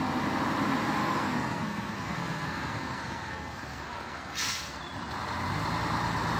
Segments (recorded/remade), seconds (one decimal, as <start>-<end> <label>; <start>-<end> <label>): 0.0-1.0 recorded; 1.0-4.8 remade; 4.8-6.4 recorded